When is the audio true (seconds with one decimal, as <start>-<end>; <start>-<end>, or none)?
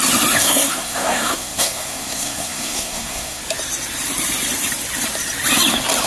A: 0.0-0.4; 3.4-6.1